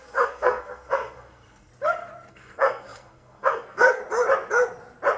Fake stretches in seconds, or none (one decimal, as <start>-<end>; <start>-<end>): 0.0-1.7; 2.3-4.0

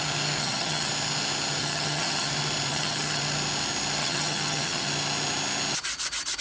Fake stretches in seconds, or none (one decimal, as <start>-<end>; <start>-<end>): 0.4-0.9; 1.6-2.3; 2.7-3.2; 4.0-4.9

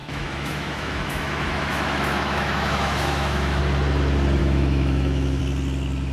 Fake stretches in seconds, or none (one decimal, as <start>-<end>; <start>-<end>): 0.0-3.6; 4.4-5.4